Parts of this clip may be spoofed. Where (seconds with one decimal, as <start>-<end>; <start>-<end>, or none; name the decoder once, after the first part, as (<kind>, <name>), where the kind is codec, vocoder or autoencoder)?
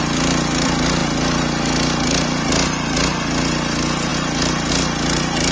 none